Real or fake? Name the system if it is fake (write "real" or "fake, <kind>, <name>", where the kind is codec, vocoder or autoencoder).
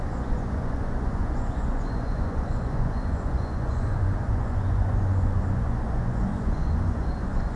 fake, vocoder, Vocos